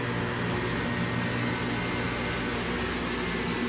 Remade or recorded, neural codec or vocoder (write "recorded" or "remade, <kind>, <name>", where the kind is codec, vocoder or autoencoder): recorded